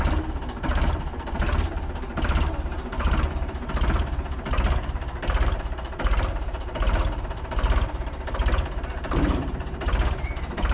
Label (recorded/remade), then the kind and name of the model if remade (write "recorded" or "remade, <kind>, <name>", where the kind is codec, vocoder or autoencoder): remade, vocoder, BigVGAN v2